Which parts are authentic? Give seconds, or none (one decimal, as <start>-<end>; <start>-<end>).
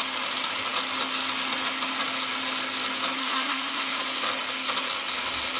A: 0.0-3.2; 4.0-5.6